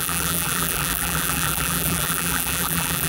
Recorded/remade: remade